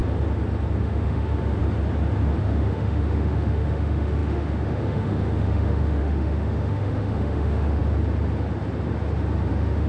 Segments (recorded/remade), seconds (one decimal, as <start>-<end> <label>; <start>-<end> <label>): 0.0-0.8 recorded; 0.8-1.6 remade; 1.6-2.4 recorded; 2.4-7.8 remade; 7.8-9.5 recorded; 9.5-9.9 remade